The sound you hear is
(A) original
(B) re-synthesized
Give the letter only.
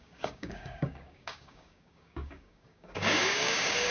B